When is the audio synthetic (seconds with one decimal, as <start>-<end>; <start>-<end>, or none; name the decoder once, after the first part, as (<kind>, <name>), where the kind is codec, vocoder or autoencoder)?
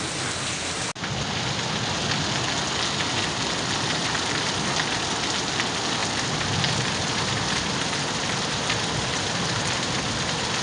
6.0-10.1 (vocoder, BigVGAN v2)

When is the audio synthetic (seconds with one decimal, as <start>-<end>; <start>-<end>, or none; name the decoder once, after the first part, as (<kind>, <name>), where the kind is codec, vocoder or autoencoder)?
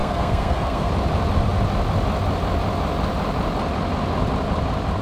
0.0-0.9 (codec, SNAC)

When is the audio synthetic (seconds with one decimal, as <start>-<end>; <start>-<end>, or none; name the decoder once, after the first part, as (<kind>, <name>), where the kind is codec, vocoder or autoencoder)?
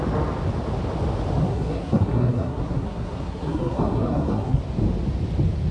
1.4-4.6 (codec, SNAC)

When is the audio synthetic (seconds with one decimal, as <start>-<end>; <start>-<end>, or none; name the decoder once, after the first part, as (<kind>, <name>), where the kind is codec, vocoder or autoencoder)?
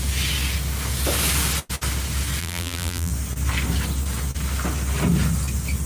2.4-3.1 (vocoder, BigVGAN v2)